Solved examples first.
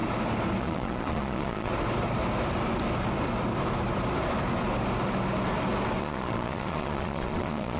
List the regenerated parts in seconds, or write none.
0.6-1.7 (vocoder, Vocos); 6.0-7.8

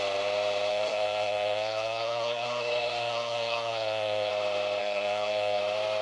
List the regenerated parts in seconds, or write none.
0.7-4.3 (codec, SNAC); 4.8-5.6

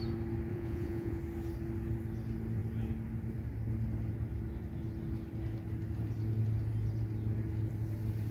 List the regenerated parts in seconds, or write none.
0.5-1.2 (vocoder, Vocos)

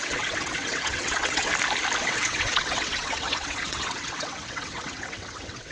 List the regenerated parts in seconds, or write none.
0.0-1.5 (vocoder, WaveNeXt); 2.0-5.7